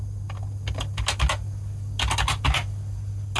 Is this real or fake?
real